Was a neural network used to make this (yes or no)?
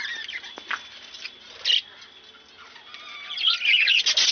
no